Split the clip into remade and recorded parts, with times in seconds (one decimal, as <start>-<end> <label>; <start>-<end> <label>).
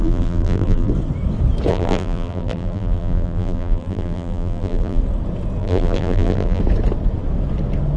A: 0.0-0.9 remade; 0.9-1.7 recorded; 1.7-5.0 remade; 5.0-5.6 recorded; 5.6-6.6 remade; 6.6-8.0 recorded